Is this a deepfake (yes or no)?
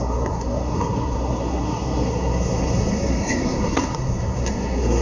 yes